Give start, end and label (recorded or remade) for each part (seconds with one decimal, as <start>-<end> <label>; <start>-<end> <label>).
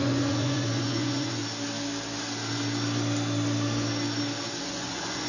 0.0-1.4 remade; 1.4-4.6 recorded; 4.6-5.3 remade